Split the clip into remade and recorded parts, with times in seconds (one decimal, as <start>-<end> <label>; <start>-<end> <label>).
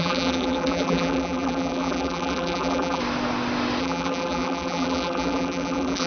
0.0-3.0 remade; 3.0-3.8 recorded; 3.8-6.1 remade